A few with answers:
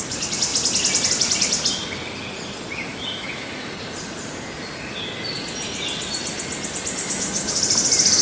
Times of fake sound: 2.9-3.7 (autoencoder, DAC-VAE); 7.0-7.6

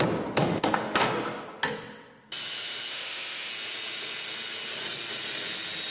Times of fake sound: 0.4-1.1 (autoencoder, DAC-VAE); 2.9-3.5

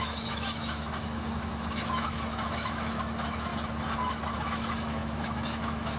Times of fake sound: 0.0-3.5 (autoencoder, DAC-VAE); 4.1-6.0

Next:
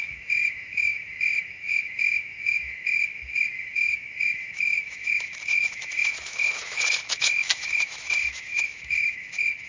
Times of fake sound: 0.0-9.7 (autoencoder, DAC-VAE)